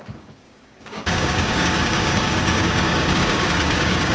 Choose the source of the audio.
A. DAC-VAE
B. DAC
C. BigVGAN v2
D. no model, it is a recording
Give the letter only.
B